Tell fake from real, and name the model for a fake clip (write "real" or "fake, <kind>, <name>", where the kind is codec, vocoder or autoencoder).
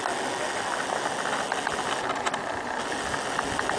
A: real